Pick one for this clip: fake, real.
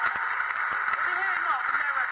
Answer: real